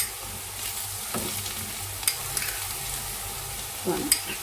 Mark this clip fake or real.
real